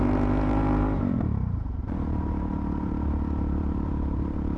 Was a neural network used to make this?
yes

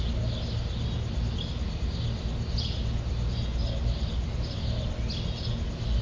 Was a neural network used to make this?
no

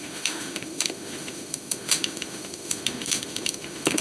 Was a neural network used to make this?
yes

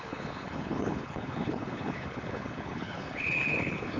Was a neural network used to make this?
yes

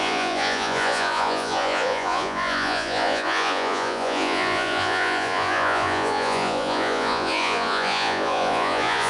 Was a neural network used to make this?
yes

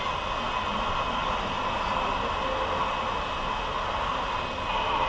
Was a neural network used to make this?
no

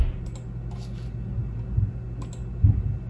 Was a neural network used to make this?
no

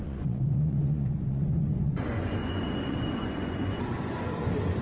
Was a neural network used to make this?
yes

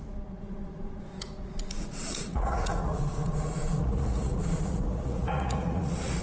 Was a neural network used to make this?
yes